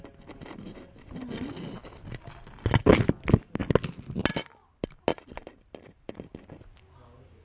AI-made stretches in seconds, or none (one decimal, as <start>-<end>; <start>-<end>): 5.1-6.5